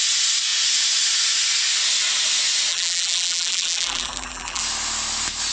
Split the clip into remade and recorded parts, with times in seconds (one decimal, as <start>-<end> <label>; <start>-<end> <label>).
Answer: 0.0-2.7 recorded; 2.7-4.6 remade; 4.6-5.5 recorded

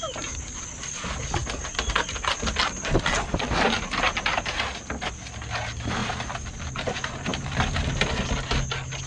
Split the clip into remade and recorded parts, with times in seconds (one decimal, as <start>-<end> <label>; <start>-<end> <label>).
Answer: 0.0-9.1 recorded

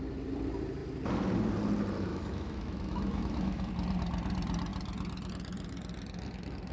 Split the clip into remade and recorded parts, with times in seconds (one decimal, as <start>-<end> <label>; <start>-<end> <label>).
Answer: 0.0-2.1 recorded; 2.1-3.7 remade; 3.7-6.7 recorded